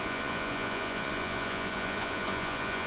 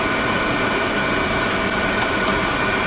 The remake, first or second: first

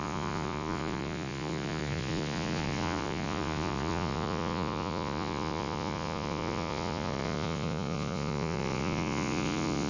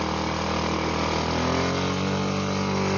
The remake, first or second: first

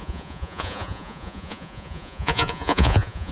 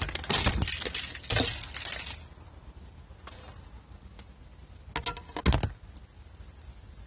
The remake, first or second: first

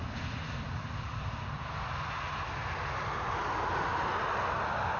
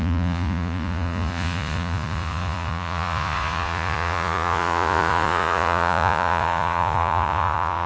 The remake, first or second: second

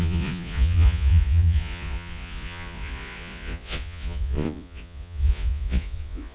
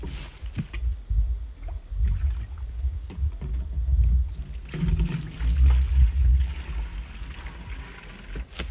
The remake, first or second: first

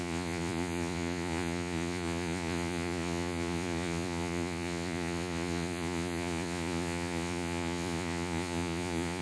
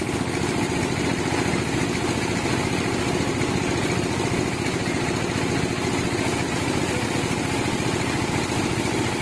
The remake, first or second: first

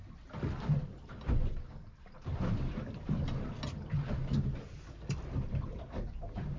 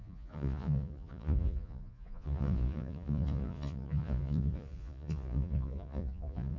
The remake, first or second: second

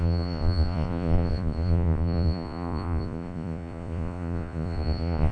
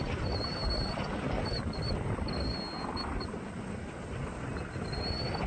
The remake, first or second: first